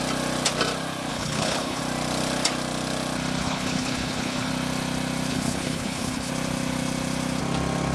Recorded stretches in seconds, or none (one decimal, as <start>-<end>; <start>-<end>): 0.0-1.1; 1.8-3.4; 4.5-5.3; 6.3-7.9